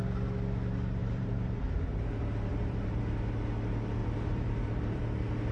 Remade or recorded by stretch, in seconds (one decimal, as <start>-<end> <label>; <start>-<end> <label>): 0.0-1.0 recorded; 1.0-3.0 remade; 3.0-4.0 recorded; 4.0-5.0 remade; 5.0-5.5 recorded